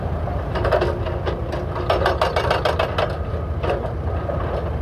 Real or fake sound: real